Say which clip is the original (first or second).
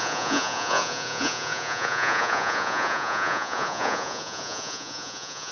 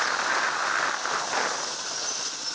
second